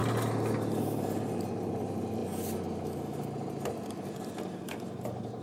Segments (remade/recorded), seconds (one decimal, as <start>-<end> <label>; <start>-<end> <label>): 0.0-0.8 recorded; 0.8-2.2 remade; 2.2-4.7 recorded; 4.7-5.4 remade

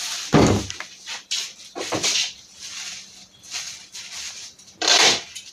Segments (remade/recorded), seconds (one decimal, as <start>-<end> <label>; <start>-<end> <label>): 0.0-2.2 recorded; 2.2-5.5 remade

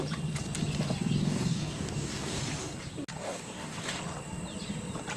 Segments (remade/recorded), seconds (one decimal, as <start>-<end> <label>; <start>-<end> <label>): 0.0-1.2 recorded; 1.2-2.4 remade; 2.4-3.2 recorded; 3.2-4.0 remade; 4.0-5.2 recorded

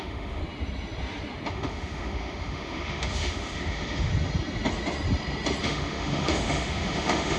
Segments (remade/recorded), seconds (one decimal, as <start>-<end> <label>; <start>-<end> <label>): 0.0-0.4 remade; 0.4-1.5 recorded; 1.5-4.1 remade; 4.1-5.6 recorded; 5.6-7.4 remade

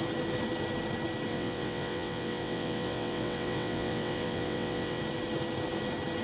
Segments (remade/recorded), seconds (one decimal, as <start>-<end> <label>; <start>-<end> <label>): 0.0-1.3 recorded; 1.3-5.0 remade; 5.0-6.2 recorded

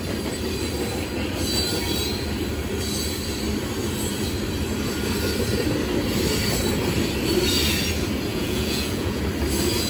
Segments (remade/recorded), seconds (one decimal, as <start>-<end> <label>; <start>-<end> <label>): 0.0-8.3 recorded; 8.3-9.2 remade; 9.2-9.9 recorded